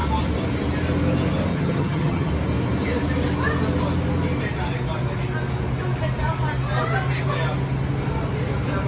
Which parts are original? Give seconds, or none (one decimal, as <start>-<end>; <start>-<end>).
0.0-1.5; 2.3-8.9